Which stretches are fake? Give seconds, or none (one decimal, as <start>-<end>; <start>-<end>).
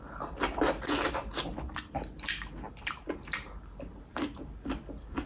none